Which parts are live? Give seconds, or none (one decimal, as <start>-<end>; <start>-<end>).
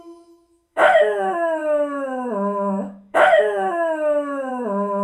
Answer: none